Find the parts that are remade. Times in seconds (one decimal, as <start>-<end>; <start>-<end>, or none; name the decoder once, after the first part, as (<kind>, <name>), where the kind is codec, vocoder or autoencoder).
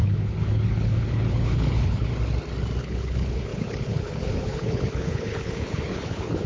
0.0-2.1 (codec, HILCodec); 2.8-6.5